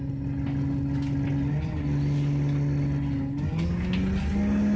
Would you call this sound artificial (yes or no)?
no